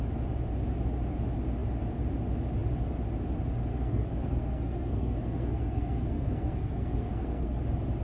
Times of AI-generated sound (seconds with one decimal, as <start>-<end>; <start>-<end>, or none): 3.7-7.6